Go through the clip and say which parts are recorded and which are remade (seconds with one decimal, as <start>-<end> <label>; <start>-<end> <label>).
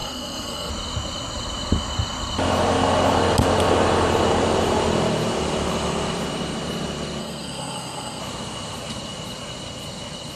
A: 0.0-0.7 remade; 0.7-7.2 recorded; 7.2-8.2 remade; 8.2-10.4 recorded